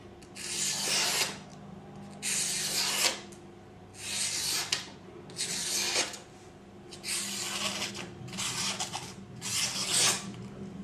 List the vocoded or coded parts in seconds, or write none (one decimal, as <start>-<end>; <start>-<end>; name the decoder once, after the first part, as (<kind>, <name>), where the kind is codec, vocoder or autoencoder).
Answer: none